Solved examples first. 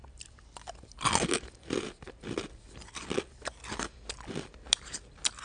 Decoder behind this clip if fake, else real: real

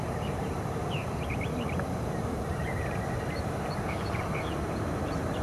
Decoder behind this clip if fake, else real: fake, vocoder, BigVGAN v2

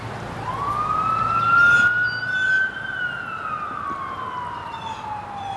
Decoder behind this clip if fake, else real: real